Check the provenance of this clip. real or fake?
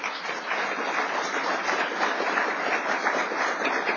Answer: fake